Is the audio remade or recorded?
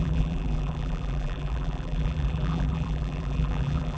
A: remade